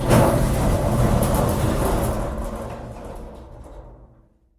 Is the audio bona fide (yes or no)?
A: no